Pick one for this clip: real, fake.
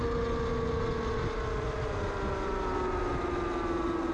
real